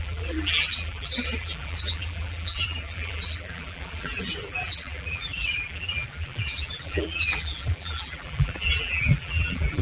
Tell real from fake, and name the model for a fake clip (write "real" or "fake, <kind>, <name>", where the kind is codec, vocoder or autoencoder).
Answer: fake, vocoder, BigVGAN v2